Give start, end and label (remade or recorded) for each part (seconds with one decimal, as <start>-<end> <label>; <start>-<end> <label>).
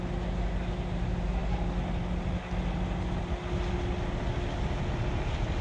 0.0-5.6 recorded